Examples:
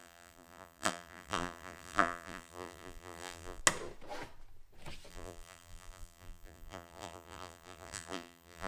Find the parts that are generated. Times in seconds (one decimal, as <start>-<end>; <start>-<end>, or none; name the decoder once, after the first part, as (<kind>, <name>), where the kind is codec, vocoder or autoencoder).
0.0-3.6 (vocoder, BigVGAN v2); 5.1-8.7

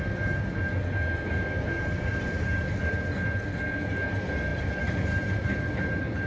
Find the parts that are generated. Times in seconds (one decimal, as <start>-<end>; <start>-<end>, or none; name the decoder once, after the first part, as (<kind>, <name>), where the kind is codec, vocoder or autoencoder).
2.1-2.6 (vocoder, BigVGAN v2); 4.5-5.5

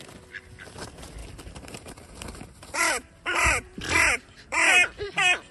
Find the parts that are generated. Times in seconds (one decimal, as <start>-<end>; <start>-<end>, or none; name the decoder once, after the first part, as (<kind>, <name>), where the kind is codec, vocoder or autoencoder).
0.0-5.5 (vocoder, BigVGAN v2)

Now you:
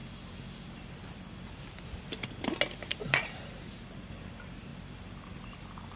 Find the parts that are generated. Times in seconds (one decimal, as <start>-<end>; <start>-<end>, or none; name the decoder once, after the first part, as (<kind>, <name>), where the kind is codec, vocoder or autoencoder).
2.8-3.4 (vocoder, BigVGAN v2)

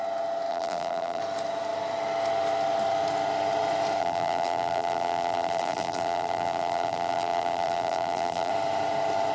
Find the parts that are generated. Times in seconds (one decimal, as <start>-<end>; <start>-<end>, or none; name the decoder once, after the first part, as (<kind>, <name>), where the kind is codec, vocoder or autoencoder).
0.5-1.2 (vocoder, BigVGAN v2); 4.0-8.5